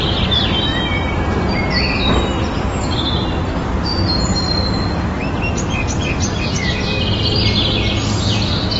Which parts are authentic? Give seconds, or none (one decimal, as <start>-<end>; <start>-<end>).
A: 0.0-8.8